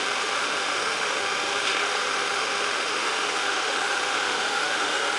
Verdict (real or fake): fake